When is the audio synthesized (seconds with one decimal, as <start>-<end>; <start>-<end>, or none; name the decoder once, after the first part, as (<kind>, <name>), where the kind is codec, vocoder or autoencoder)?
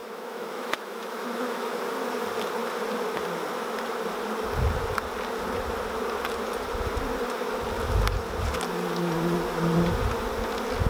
0.0-1.8 (autoencoder, DAC-VAE)